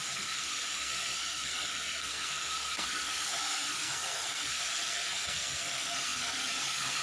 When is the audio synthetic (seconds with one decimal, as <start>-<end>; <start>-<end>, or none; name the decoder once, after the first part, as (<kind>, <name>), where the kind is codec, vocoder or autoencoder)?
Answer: 0.0-7.0 (codec, SNAC)